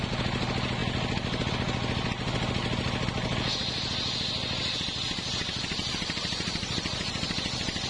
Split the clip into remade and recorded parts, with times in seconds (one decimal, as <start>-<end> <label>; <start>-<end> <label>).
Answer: 0.0-7.9 recorded